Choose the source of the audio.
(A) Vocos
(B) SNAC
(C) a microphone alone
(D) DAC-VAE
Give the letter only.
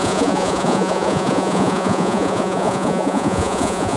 A